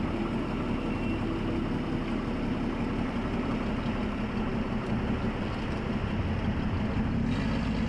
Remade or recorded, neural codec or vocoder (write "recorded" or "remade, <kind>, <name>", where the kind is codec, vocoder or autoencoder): recorded